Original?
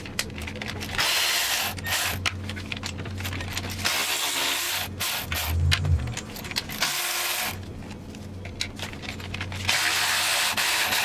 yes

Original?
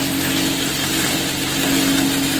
yes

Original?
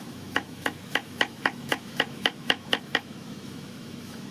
no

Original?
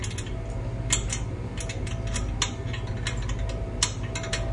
yes